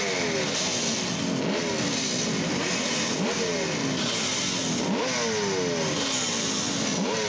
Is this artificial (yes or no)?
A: no